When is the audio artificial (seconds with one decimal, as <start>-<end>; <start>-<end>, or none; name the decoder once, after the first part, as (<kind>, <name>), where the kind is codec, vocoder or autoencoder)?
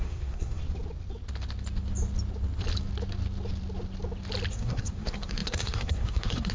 0.0-0.6 (codec, SNAC); 4.5-6.5